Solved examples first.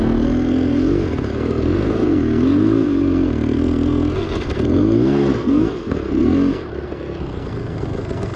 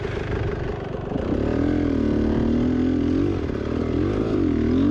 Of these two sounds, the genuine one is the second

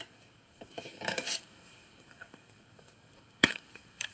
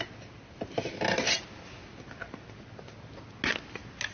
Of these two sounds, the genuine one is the second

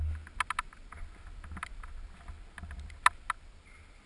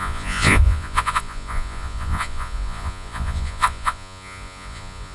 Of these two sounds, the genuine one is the first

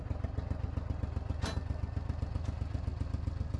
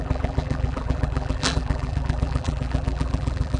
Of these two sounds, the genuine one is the first